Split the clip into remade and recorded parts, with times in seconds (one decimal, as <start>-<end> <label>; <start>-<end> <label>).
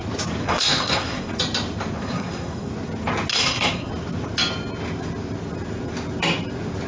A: 0.0-0.4 recorded; 0.4-1.3 remade; 1.3-2.0 recorded; 2.0-2.7 remade; 2.7-3.3 recorded; 3.3-3.9 remade; 3.9-6.9 recorded